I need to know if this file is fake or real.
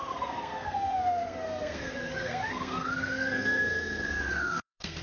fake